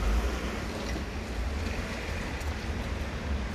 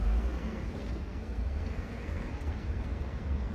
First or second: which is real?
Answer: first